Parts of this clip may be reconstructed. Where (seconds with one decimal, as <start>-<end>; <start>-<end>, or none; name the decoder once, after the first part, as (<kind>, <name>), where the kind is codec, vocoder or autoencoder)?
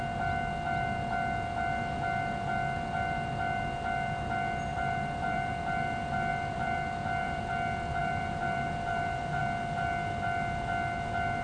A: 4.7-5.5 (vocoder, BigVGAN v2); 6.3-7.4; 8.0-9.4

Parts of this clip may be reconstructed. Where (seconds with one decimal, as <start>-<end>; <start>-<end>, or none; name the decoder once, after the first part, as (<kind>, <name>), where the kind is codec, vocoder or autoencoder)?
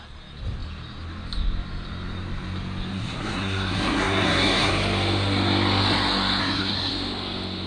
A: 2.9-4.7 (codec, SNAC); 6.4-6.9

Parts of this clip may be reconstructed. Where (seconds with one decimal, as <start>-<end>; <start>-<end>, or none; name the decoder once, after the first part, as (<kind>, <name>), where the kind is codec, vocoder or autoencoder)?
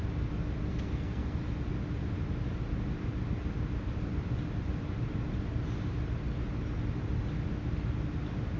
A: 0.7-1.4 (codec, SNAC)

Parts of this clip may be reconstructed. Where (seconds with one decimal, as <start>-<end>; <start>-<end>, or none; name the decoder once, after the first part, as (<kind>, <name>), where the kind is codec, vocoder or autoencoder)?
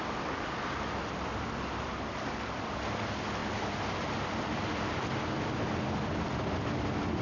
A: none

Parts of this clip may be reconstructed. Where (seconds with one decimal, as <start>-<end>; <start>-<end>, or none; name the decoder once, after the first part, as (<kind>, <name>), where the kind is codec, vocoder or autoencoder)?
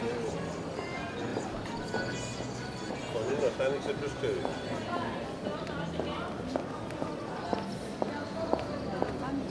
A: none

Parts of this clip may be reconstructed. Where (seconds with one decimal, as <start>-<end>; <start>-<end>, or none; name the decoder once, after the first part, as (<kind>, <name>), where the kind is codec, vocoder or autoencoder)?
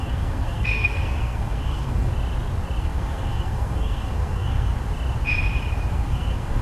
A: 0.0-2.1 (codec, SNAC); 2.8-4.7; 5.9-6.6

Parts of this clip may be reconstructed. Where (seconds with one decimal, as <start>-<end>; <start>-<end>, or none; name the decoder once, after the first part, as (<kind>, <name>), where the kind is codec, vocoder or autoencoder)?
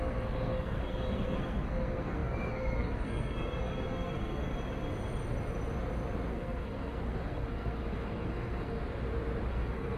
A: 0.0-4.5 (codec, SNAC); 6.3-8.8; 9.5-10.0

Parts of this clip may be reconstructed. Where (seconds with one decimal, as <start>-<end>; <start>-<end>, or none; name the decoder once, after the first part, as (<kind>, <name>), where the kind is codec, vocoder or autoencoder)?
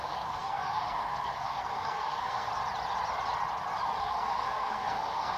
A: 0.0-2.5 (codec, SNAC); 4.0-5.4